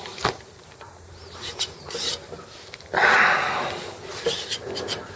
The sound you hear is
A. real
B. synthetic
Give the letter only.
A